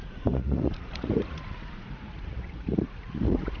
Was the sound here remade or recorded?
remade